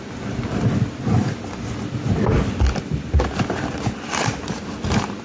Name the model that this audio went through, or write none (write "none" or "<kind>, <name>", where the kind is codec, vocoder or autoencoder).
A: none